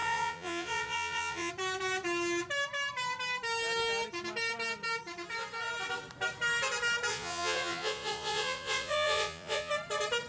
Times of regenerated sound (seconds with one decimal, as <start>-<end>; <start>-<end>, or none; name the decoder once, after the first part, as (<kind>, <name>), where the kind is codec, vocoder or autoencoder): 0.0-1.5 (vocoder, Vocos); 7.1-9.7